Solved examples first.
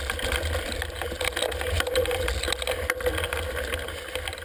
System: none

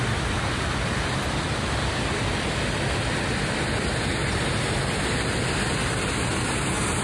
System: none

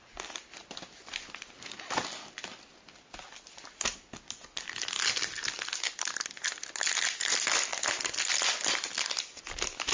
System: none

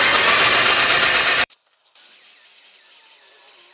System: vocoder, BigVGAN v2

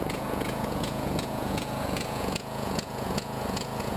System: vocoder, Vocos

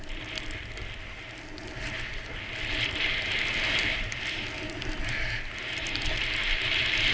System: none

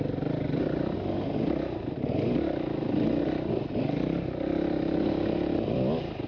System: none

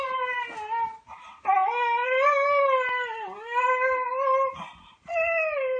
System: none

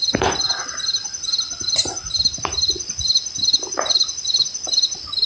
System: none